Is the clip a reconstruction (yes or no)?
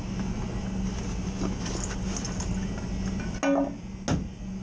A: no